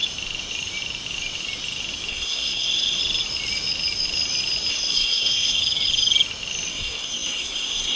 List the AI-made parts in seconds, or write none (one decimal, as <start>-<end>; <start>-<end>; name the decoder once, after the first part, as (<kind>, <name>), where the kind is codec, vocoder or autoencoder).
2.1-3.0 (codec, SNAC); 4.7-5.6; 6.7-8.0